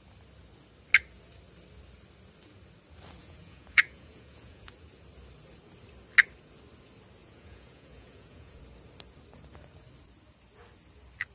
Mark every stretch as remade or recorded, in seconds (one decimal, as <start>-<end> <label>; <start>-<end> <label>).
0.0-3.2 recorded; 3.2-4.7 remade; 4.7-7.2 recorded; 7.2-8.6 remade; 8.6-11.3 recorded